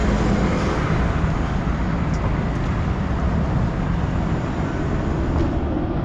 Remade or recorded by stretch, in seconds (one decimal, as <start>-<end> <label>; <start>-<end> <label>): 0.0-6.0 recorded